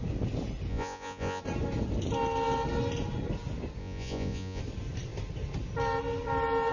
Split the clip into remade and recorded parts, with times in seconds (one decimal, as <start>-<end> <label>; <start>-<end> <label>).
0.0-0.7 recorded; 0.7-1.4 remade; 1.4-3.8 recorded; 3.8-4.6 remade; 4.6-6.7 recorded